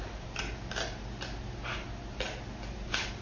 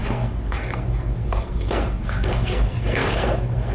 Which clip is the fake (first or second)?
second